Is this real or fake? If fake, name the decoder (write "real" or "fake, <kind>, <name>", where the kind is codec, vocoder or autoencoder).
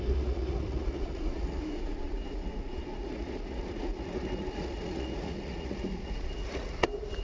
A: fake, vocoder, Vocos